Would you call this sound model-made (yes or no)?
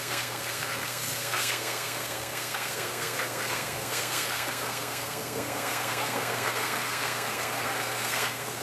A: yes